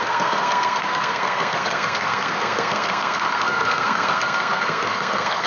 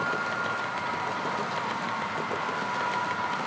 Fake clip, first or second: first